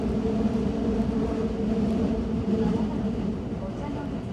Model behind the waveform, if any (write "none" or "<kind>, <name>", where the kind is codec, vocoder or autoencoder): none